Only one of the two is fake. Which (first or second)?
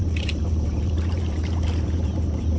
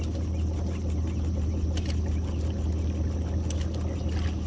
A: first